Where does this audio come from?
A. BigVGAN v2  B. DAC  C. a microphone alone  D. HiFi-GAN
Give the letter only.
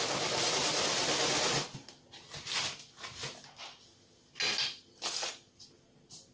C